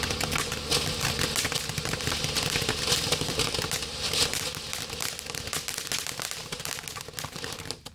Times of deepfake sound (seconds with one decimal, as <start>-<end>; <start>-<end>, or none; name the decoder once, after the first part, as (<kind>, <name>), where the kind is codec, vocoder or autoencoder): none

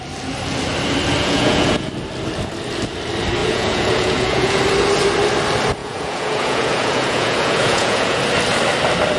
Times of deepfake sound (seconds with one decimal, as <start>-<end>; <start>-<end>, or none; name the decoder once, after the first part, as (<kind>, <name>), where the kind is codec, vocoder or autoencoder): 1.2-1.9 (vocoder, Vocos); 3.4-4.6; 5.8-8.2

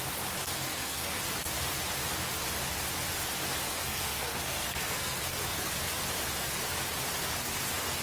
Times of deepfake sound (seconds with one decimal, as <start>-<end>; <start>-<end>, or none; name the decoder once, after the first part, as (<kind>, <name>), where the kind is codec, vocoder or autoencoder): 0.4-1.2 (codec, SNAC); 3.7-5.7